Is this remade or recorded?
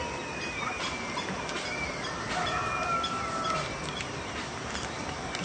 recorded